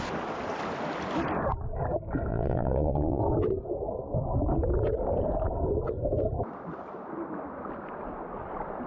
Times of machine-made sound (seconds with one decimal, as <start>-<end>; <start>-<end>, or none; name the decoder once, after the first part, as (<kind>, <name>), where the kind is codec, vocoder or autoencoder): 2.3-3.2 (vocoder, Vocos)